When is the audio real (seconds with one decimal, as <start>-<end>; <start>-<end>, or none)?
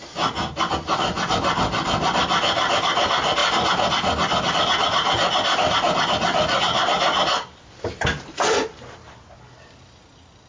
0.0-10.5